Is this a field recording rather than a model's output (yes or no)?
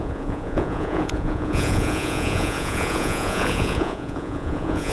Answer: no